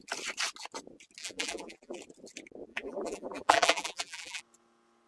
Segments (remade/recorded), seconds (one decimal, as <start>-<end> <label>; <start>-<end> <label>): 0.0-1.2 recorded; 1.2-2.0 remade; 2.0-2.7 recorded; 2.7-4.4 remade; 4.4-5.1 recorded